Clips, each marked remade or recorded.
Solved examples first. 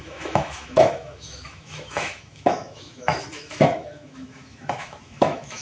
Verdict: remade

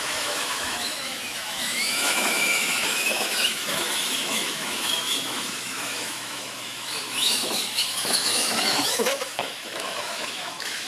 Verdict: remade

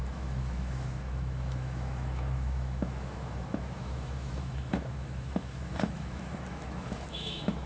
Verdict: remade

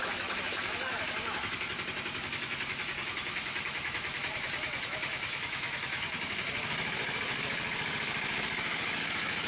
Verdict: remade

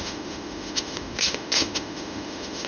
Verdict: remade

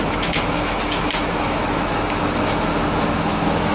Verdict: remade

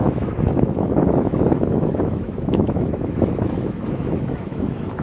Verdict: remade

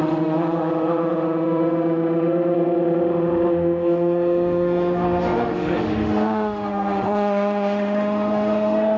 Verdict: remade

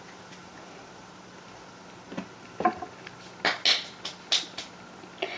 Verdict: recorded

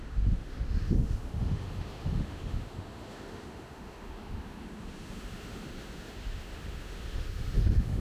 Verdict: remade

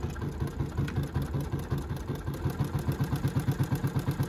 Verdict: recorded